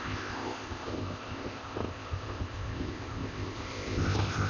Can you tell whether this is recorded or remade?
remade